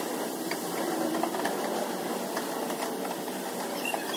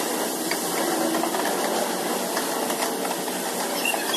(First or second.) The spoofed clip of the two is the first